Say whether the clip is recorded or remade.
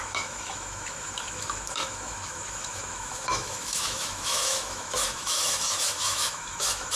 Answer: remade